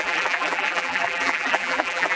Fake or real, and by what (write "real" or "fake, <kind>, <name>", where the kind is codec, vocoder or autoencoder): fake, vocoder, BigVGAN v2